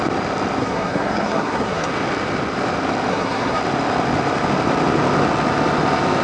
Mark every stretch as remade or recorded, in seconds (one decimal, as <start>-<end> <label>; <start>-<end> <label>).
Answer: 0.0-0.6 recorded; 0.6-1.9 remade; 1.9-3.1 recorded; 3.1-3.6 remade; 3.6-6.2 recorded